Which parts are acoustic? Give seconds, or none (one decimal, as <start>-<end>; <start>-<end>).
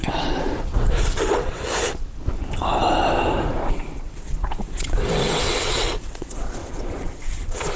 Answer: 1.7-3.7